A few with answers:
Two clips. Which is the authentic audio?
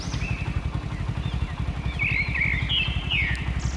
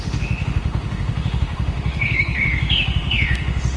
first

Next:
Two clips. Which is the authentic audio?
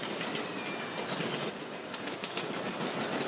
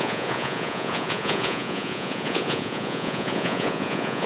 first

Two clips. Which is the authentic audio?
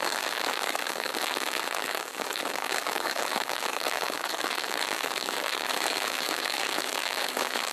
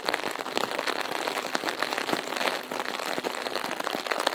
second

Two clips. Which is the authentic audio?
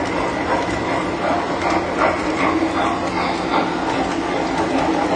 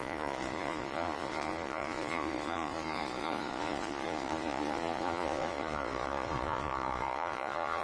first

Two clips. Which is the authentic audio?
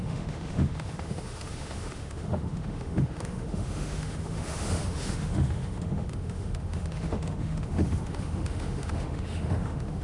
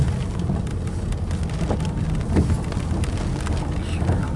second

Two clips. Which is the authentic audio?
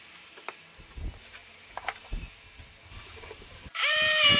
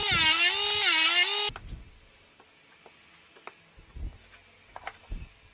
second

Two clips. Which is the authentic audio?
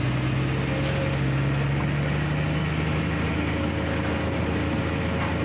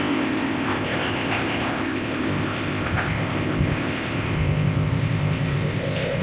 first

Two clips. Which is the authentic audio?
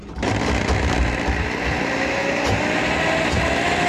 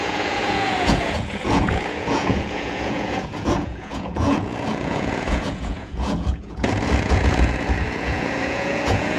first